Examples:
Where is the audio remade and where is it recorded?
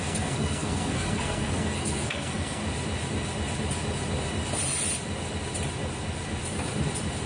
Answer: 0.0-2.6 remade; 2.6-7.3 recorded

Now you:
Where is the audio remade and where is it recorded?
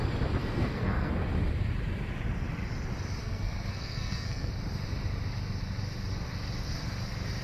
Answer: 0.0-0.4 recorded; 0.4-1.1 remade; 1.1-3.2 recorded; 3.2-4.5 remade; 4.5-7.4 recorded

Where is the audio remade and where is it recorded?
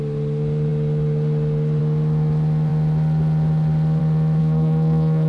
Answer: 0.0-4.4 recorded; 4.4-5.3 remade